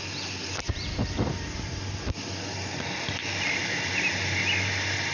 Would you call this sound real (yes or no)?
yes